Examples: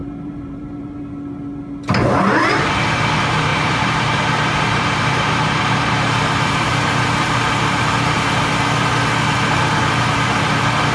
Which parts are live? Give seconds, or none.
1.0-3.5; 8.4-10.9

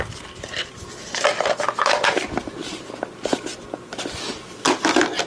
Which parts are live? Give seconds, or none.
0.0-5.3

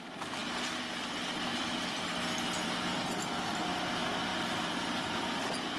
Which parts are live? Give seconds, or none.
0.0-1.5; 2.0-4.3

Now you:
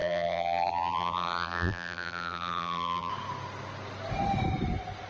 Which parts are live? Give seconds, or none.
3.1-5.1